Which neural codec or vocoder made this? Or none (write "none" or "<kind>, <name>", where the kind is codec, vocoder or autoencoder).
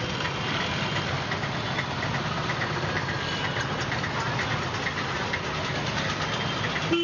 none